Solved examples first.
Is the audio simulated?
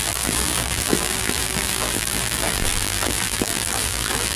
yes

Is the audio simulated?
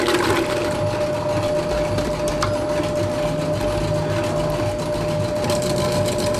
no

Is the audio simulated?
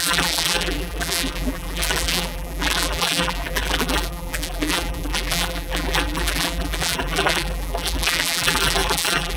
yes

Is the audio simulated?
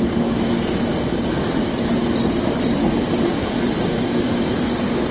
no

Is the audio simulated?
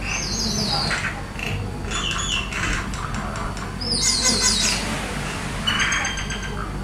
no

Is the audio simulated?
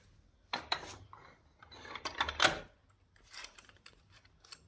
no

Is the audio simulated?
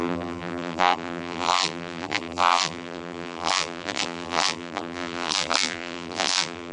yes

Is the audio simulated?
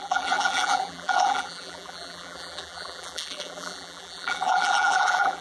yes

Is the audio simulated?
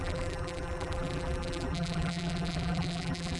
yes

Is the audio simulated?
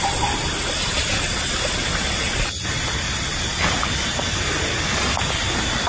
no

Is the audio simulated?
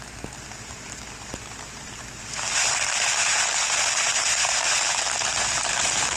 yes